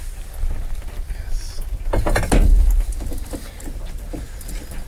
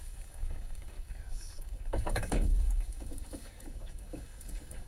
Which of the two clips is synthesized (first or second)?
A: second